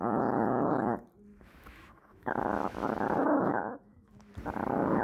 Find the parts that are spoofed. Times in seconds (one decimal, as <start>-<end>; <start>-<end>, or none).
1.3-4.3